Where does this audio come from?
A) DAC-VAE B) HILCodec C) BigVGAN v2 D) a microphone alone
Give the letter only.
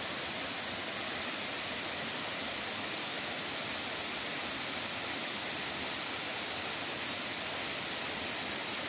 D